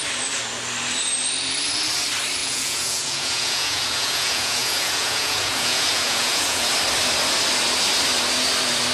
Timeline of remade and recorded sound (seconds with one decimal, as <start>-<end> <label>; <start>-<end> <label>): 0.0-2.4 recorded; 2.4-6.7 remade; 6.7-8.9 recorded